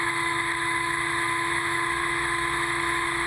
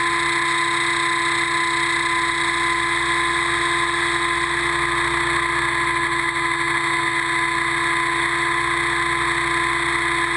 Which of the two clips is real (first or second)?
second